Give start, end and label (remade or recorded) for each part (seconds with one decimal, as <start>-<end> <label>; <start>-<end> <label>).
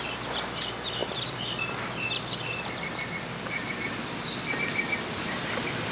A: 0.0-5.9 recorded